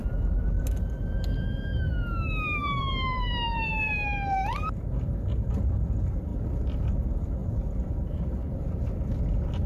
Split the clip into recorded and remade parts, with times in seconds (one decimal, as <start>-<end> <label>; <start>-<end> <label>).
0.0-1.4 recorded; 1.4-9.7 remade